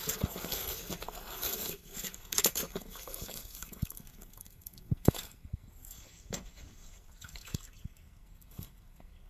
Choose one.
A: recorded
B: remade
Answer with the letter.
B